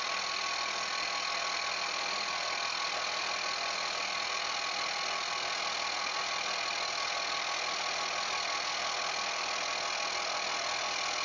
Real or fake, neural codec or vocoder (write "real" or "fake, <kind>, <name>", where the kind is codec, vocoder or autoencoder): real